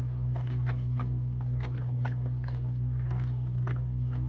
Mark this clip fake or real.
fake